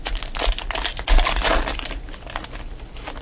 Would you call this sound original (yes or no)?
yes